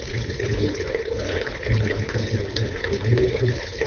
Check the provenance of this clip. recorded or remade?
remade